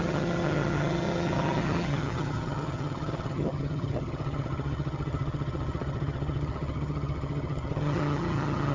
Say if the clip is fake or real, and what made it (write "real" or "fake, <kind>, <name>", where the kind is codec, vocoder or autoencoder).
fake, vocoder, HiFi-GAN